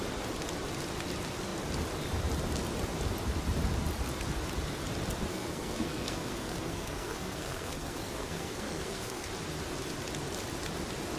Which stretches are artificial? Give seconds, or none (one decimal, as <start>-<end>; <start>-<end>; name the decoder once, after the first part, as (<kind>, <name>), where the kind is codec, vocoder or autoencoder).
5.3-9.3 (codec, SNAC)